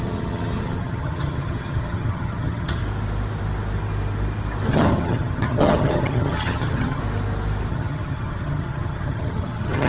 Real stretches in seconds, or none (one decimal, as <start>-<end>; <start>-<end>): 2.8-4.7; 7.0-7.7